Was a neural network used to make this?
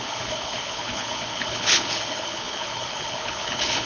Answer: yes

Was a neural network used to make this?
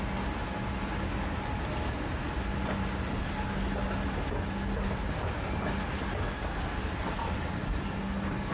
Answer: no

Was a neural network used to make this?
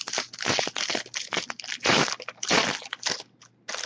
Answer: no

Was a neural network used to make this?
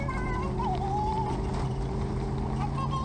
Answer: no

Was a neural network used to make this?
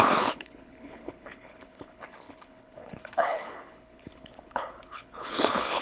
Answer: yes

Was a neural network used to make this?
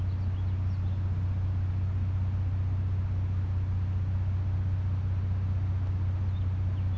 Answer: no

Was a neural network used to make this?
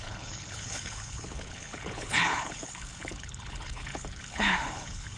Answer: yes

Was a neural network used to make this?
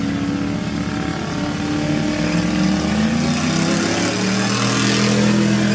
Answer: no